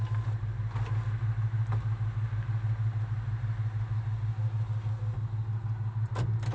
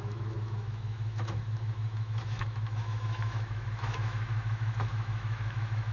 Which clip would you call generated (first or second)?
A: second